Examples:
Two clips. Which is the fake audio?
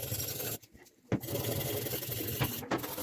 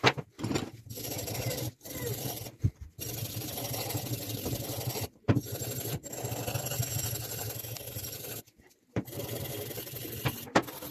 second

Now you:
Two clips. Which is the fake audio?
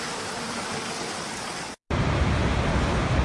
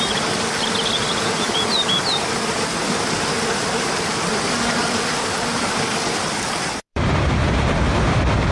second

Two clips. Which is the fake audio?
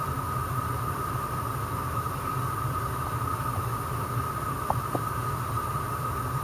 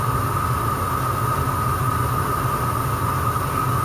first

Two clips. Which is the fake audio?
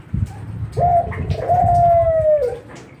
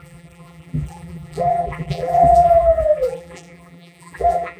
second